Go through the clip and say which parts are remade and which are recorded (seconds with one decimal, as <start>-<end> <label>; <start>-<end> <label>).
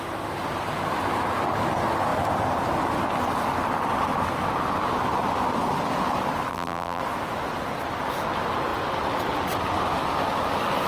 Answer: 0.0-6.5 recorded; 6.5-7.0 remade; 7.0-10.9 recorded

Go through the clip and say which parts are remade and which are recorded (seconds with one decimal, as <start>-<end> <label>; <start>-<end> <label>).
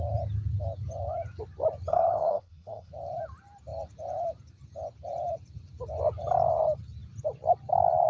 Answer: 0.0-1.9 recorded; 1.9-2.9 remade; 2.9-8.1 recorded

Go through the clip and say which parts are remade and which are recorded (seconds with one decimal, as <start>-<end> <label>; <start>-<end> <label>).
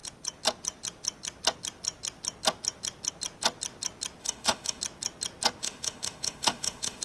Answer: 0.0-4.2 recorded; 4.2-4.8 remade; 4.8-5.6 recorded; 5.6-7.0 remade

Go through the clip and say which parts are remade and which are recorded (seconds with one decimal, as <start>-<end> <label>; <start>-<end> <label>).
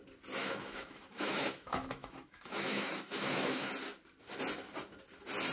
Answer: 0.0-0.4 recorded; 0.4-3.7 remade; 3.7-5.5 recorded